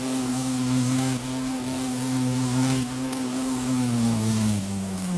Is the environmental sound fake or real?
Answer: fake